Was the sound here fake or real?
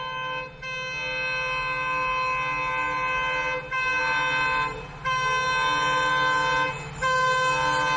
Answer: real